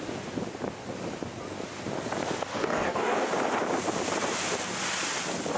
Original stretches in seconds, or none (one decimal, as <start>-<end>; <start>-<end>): 0.0-2.5; 3.3-5.6